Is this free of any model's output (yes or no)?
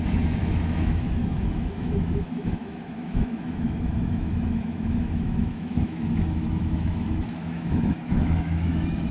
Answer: no